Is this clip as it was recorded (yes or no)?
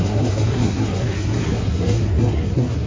no